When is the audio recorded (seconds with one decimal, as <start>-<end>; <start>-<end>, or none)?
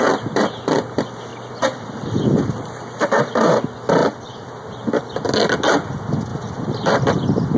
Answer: 0.0-1.3; 3.6-4.0; 4.5-6.3; 7.1-7.6